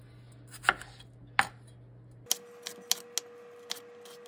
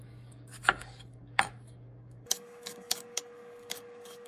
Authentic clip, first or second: first